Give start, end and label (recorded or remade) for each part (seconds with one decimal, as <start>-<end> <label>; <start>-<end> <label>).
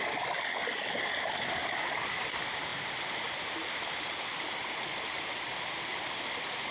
0.0-2.7 recorded; 2.7-6.7 remade